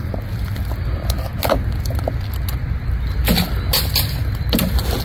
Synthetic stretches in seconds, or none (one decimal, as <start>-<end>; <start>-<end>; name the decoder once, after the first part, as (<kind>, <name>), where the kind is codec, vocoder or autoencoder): none